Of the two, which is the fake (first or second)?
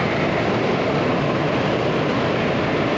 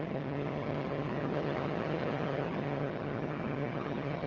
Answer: second